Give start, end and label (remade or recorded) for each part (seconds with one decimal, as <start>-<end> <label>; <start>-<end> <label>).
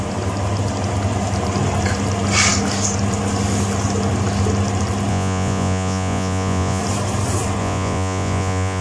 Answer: 0.0-5.1 recorded; 5.1-6.8 remade; 6.8-7.6 recorded; 7.6-8.8 remade